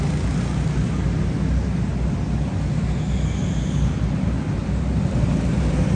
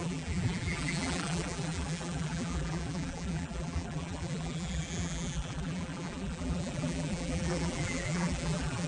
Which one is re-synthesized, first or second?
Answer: second